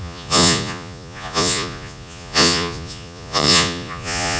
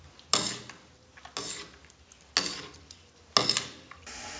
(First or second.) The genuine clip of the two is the second